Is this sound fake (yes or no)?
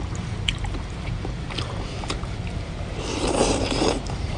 yes